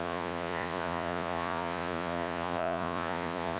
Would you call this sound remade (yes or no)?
yes